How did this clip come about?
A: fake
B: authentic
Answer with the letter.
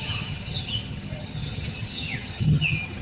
A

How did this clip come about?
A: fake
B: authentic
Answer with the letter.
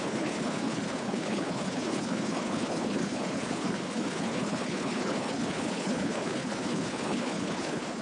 A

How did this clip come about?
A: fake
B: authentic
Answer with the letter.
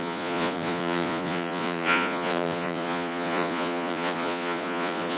A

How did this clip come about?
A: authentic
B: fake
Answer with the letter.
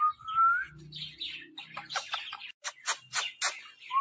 A